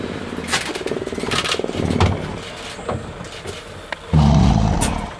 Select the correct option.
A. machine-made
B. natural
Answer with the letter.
B